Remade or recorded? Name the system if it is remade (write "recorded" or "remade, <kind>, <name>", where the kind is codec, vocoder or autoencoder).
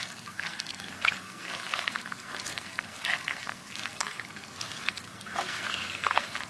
remade, codec, SNAC